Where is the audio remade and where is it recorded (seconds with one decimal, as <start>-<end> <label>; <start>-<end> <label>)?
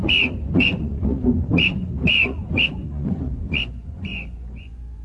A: 0.0-5.0 remade